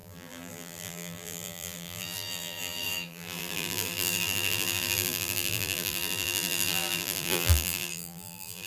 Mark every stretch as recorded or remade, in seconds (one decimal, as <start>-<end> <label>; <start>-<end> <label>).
0.0-8.7 remade